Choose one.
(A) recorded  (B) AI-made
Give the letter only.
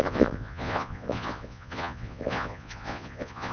B